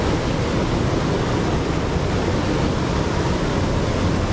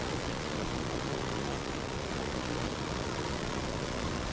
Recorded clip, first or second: first